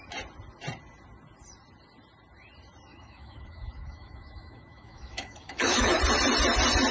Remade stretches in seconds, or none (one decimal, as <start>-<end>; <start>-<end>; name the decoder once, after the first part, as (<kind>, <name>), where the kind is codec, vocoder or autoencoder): 2.9-6.0 (autoencoder, DAC-VAE)